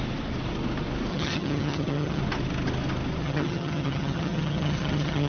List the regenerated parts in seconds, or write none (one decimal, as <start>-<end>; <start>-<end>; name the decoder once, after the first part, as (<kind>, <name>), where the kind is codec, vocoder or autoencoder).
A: 1.1-2.2 (vocoder, HiFi-GAN); 3.2-5.3